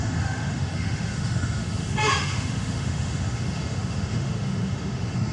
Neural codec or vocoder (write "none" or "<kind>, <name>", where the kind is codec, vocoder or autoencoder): autoencoder, DAC-VAE